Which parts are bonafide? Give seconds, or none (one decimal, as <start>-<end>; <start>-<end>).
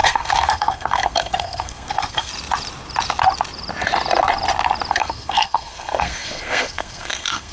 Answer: 2.3-4.9